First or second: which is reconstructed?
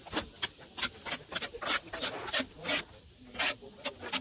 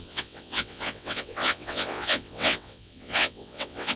second